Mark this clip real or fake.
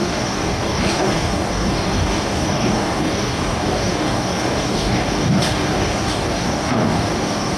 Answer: fake